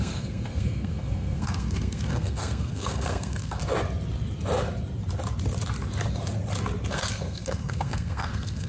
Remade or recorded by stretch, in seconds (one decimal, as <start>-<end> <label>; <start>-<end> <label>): 0.0-3.6 remade; 3.6-6.9 recorded; 6.9-8.7 remade